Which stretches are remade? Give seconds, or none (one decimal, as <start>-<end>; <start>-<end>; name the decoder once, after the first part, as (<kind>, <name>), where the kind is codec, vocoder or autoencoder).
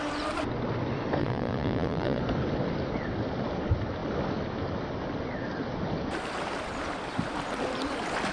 1.2-2.2 (vocoder, Vocos)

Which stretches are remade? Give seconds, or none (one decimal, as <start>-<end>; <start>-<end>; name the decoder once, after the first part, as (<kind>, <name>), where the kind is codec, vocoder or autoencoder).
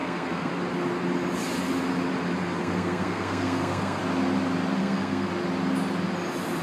0.0-0.5 (codec, SNAC); 2.6-4.0; 4.8-5.3